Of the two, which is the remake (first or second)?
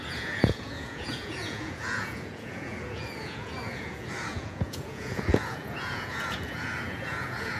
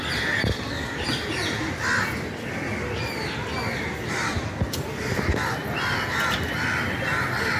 first